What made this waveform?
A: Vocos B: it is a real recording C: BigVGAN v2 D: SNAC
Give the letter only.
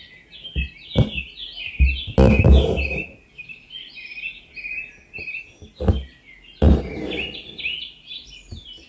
B